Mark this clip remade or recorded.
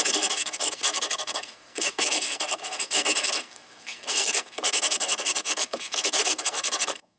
remade